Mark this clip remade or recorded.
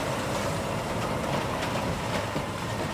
remade